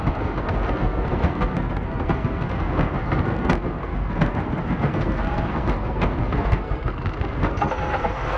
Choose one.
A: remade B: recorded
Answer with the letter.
A